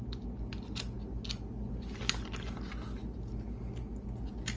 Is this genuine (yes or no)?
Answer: yes